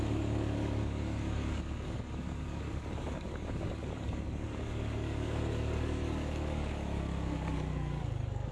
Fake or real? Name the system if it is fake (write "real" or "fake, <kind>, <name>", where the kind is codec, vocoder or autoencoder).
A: fake, codec, DAC